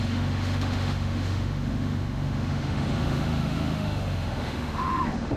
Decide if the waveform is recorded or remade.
remade